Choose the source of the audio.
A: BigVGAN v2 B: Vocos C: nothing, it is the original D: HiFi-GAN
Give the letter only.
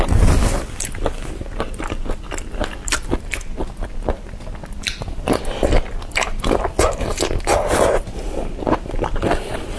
C